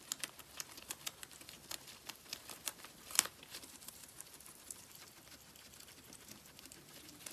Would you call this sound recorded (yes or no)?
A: no